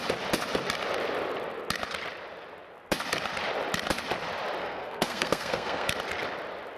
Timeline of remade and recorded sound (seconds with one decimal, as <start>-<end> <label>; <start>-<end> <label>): 0.0-4.6 recorded; 4.6-5.9 remade; 5.9-6.8 recorded